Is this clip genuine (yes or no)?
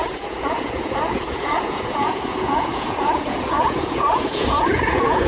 no